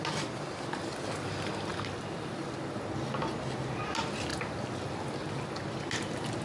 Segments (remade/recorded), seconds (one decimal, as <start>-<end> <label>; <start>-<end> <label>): 0.0-6.4 recorded